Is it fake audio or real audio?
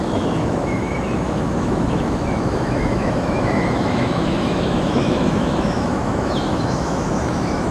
fake